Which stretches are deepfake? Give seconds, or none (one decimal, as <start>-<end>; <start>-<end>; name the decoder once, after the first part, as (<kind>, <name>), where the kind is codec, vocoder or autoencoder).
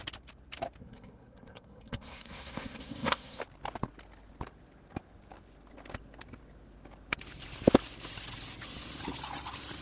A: 0.8-3.4 (codec, SNAC)